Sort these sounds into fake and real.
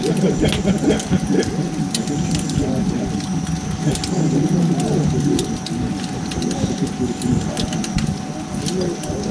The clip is real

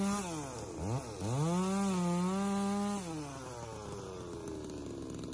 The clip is real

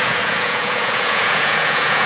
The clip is fake